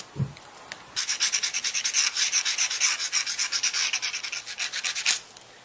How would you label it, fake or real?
real